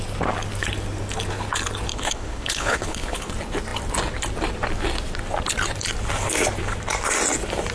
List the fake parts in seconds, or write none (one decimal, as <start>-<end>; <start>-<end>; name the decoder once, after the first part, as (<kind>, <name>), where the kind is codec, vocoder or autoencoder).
1.9-3.3 (codec, HILCodec)